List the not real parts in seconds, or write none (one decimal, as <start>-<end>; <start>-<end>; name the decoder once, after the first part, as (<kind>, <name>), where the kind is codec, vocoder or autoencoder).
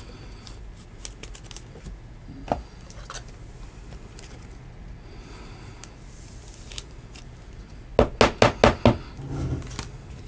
none